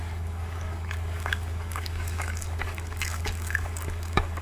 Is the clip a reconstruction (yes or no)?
yes